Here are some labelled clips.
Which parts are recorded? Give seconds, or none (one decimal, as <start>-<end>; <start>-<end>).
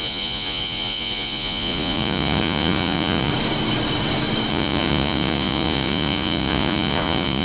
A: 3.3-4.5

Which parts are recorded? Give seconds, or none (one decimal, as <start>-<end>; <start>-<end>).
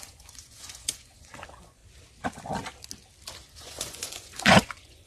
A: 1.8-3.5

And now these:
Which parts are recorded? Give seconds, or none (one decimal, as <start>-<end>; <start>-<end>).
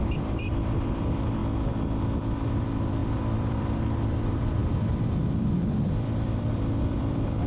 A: 1.4-2.6; 4.6-5.4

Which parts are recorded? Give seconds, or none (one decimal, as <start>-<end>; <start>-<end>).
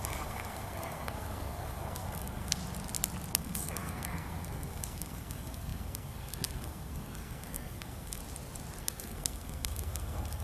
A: 2.6-3.3; 8.2-8.8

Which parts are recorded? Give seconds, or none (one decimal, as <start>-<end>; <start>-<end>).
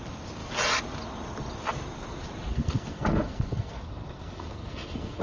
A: 0.0-2.5